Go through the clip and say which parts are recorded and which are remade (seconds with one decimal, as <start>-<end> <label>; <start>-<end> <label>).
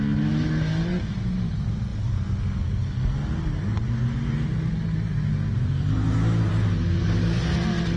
0.0-0.9 recorded; 0.9-1.5 remade; 1.5-8.0 recorded